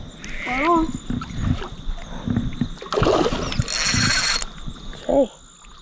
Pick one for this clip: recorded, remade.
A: recorded